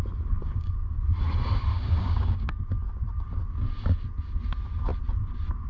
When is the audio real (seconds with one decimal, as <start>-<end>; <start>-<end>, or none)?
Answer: 0.0-0.4; 1.0-1.7; 2.6-5.7